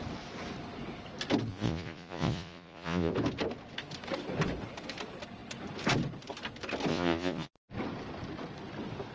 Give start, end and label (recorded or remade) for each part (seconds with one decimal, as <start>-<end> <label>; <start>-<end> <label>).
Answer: 0.0-1.5 recorded; 1.5-3.1 remade; 3.1-6.9 recorded; 6.9-7.5 remade; 7.5-9.1 recorded